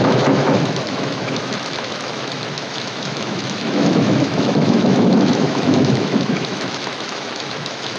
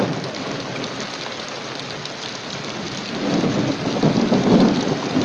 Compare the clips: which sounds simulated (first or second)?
first